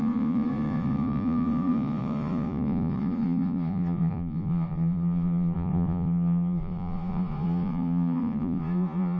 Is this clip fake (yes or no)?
yes